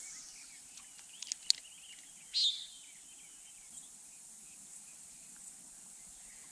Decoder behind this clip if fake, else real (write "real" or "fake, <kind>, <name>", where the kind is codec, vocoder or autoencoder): real